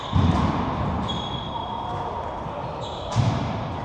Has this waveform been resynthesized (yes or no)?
no